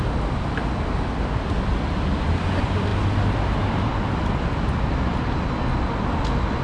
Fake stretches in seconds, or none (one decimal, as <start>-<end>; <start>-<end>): none